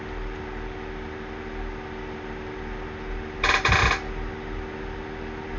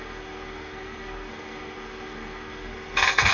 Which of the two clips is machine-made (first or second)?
second